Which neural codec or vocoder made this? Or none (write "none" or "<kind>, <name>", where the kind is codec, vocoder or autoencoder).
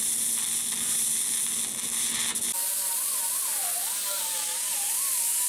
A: none